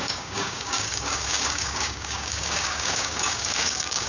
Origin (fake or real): fake